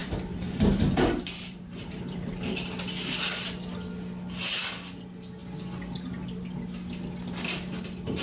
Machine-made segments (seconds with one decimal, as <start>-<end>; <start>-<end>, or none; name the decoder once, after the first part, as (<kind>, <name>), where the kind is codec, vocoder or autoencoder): 0.0-2.3 (vocoder, BigVGAN v2)